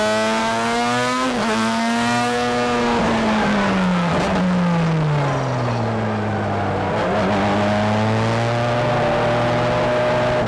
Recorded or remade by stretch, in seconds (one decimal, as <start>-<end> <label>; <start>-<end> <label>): 0.0-0.4 recorded; 0.4-4.1 remade; 4.1-10.5 recorded